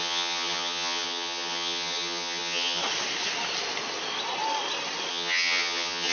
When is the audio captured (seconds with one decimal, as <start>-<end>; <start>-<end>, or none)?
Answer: 2.8-5.1